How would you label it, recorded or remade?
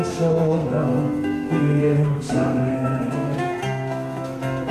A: remade